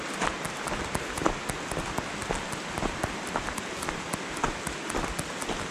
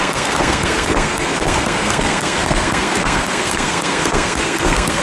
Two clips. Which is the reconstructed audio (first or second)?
second